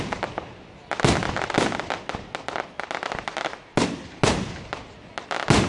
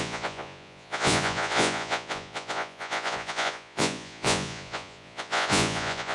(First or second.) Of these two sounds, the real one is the first